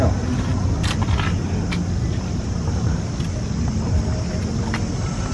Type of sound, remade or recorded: recorded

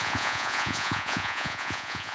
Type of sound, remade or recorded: remade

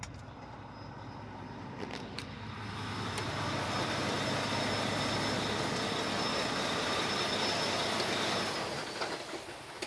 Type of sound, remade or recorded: recorded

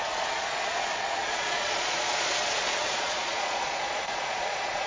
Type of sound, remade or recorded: remade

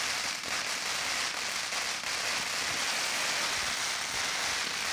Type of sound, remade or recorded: recorded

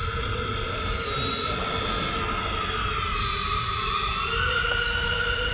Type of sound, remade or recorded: recorded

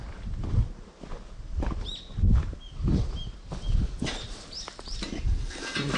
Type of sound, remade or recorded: recorded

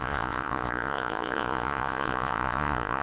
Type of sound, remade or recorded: remade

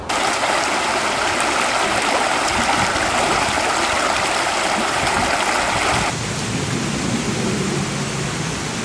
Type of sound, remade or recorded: recorded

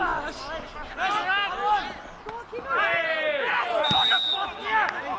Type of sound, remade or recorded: recorded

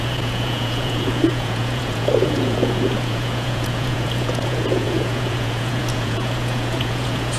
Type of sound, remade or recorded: remade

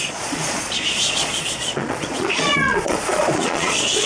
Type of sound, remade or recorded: remade